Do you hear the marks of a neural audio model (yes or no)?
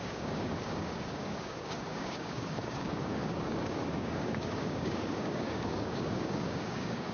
yes